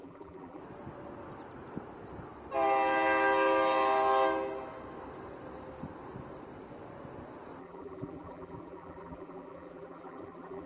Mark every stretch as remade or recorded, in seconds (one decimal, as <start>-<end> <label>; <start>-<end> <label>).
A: 0.0-0.6 remade; 0.6-7.6 recorded; 7.6-10.7 remade